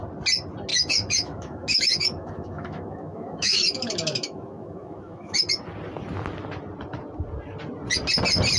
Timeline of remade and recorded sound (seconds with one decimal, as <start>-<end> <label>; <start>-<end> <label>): 0.0-0.7 recorded; 0.7-5.5 remade; 5.5-8.6 recorded